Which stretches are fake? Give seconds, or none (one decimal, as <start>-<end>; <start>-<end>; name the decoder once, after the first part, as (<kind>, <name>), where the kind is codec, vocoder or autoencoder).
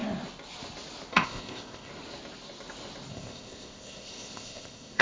1.1-1.9 (codec, ZipCodec); 3.1-5.0